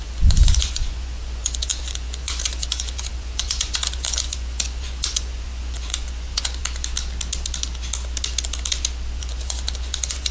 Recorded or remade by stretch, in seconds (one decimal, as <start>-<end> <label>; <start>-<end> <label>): 0.0-6.6 remade; 6.6-9.2 recorded; 9.2-10.3 remade